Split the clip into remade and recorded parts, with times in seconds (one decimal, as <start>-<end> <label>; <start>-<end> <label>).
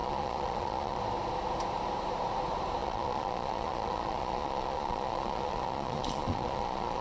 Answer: 0.0-1.0 remade; 1.0-2.8 recorded; 2.8-7.0 remade